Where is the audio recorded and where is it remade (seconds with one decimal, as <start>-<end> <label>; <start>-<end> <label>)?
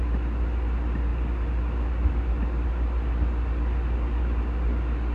0.0-5.1 recorded